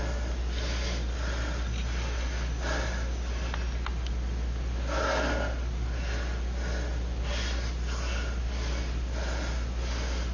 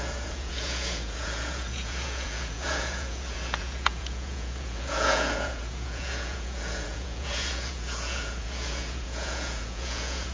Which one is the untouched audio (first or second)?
first